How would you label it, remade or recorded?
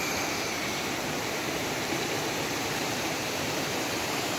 remade